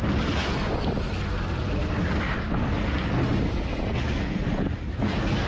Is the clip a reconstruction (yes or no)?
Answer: no